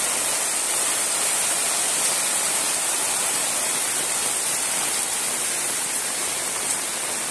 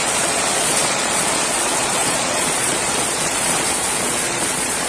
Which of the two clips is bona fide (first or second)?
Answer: first